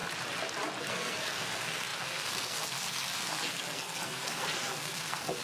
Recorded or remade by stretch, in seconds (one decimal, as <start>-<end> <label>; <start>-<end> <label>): 0.0-0.8 recorded; 0.8-5.4 remade